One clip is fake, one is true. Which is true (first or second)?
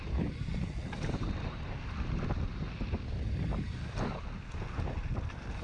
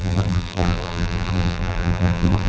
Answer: first